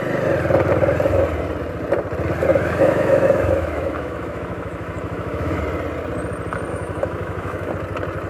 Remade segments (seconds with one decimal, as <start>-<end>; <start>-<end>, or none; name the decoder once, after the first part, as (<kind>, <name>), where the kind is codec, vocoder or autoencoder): 2.5-5.6 (autoencoder, DAC-VAE); 6.7-7.7